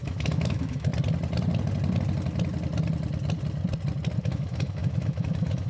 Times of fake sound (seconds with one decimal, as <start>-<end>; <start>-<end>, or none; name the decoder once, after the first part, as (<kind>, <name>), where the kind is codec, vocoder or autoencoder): 0.0-0.9 (autoencoder, DAC-VAE); 4.2-5.7